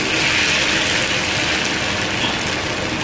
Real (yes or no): yes